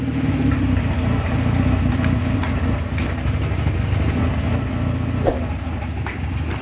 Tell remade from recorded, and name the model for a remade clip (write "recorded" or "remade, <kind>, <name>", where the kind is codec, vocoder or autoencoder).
recorded